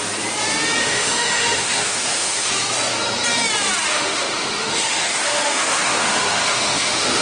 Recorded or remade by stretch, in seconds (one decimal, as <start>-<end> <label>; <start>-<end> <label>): 0.0-0.8 recorded; 0.8-2.5 remade; 2.5-3.9 recorded; 3.9-7.2 remade